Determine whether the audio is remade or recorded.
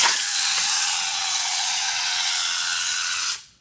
remade